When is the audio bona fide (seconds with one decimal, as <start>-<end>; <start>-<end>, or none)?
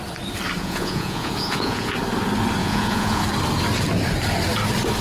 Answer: 0.0-0.6; 1.9-2.6; 3.2-5.0